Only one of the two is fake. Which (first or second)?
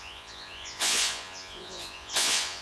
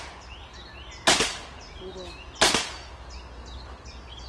first